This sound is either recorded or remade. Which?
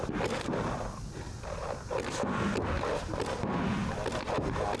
recorded